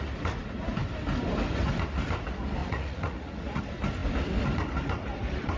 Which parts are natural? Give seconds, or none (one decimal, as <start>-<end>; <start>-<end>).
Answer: 0.0-2.6; 3.6-5.6